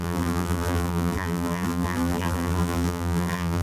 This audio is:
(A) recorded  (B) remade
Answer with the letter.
B